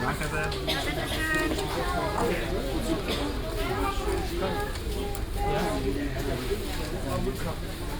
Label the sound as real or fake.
real